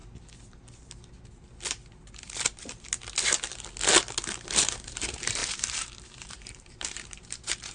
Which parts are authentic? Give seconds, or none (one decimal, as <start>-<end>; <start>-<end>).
0.0-4.5